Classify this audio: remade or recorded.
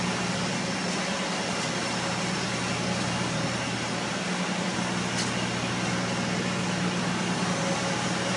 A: recorded